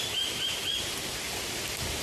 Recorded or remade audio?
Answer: remade